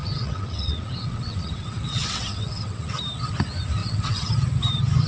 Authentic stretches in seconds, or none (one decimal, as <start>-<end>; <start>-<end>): 3.0-3.8; 4.3-5.1